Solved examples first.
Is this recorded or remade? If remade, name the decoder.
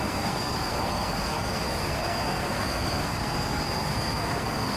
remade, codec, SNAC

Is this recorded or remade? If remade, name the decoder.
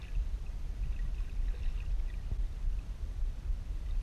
recorded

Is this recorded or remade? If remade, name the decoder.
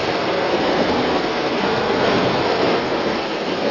remade, codec, SNAC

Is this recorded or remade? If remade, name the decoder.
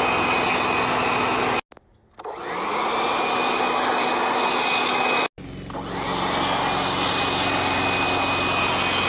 recorded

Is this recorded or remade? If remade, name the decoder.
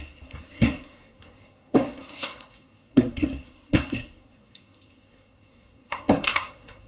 remade, codec, SNAC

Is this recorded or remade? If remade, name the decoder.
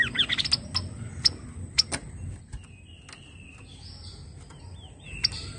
recorded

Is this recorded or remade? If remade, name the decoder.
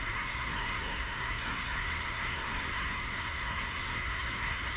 remade, codec, SNAC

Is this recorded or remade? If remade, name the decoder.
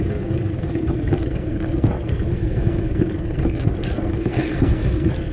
remade, codec, SNAC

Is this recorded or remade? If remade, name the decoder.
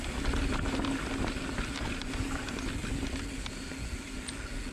recorded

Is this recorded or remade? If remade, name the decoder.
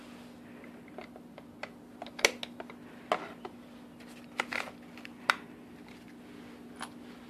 recorded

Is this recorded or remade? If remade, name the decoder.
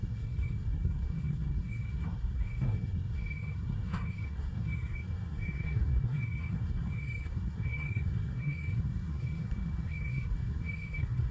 remade, codec, SNAC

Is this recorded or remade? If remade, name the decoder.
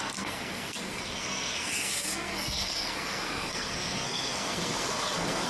remade, codec, SNAC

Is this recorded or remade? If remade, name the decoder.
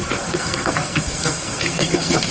remade, codec, SNAC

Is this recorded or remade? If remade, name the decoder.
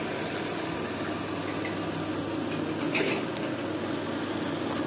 recorded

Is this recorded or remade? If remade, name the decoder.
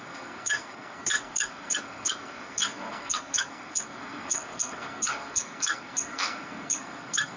remade, codec, SNAC